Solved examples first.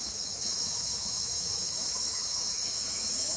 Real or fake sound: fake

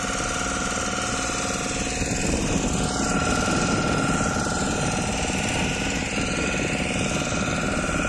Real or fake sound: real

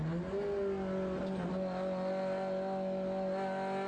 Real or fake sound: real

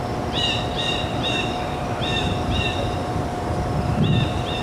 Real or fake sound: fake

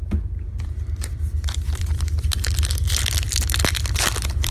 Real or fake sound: fake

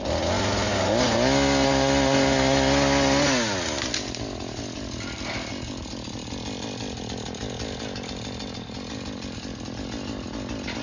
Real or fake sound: real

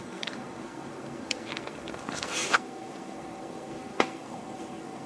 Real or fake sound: fake